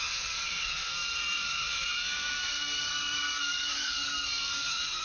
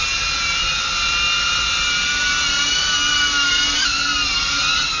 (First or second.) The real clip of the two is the second